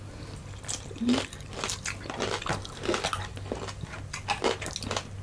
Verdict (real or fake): real